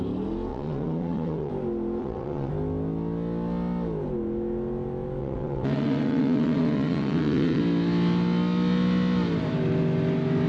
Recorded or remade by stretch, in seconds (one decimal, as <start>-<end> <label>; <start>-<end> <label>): 0.0-0.5 recorded; 0.5-1.5 remade; 1.5-2.0 recorded; 2.0-2.5 remade; 2.5-5.2 recorded; 5.2-7.6 remade; 7.6-10.5 recorded